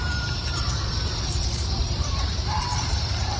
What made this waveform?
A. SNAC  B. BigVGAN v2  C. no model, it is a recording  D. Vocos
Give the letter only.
B